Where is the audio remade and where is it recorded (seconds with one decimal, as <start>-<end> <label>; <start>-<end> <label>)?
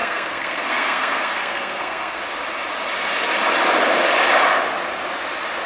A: 0.0-2.2 remade; 2.2-5.7 recorded